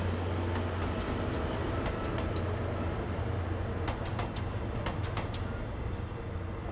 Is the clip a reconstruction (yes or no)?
no